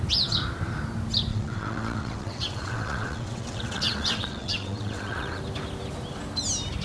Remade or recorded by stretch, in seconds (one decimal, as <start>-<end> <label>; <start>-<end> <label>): 0.0-1.3 recorded; 1.3-5.4 remade; 5.4-6.8 recorded